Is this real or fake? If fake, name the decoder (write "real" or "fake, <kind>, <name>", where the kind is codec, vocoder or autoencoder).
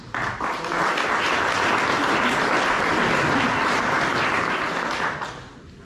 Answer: real